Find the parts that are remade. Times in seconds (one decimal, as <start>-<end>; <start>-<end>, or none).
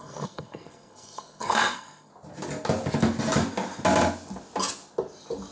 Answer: 0.0-2.1